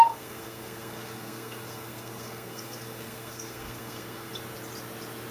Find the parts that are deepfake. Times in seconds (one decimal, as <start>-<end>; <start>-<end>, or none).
0.0-4.3